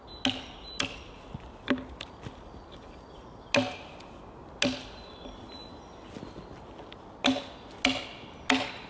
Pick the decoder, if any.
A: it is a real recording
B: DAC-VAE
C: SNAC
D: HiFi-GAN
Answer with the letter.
A